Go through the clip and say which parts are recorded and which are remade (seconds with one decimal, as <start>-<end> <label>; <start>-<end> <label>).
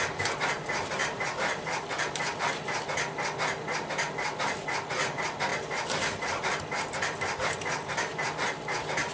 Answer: 0.0-1.0 recorded; 1.0-2.5 remade; 2.5-5.5 recorded; 5.5-7.5 remade; 7.5-9.1 recorded